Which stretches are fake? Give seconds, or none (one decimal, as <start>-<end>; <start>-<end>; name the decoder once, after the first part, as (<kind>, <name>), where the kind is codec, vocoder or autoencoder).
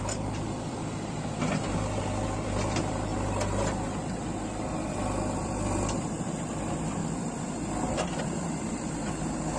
0.0-3.1 (vocoder, BigVGAN v2); 5.5-7.0; 8.2-9.6